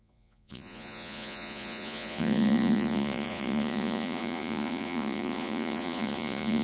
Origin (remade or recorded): remade